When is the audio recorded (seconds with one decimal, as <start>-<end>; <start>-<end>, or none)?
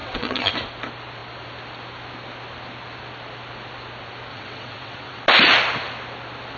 0.5-4.3; 5.2-6.6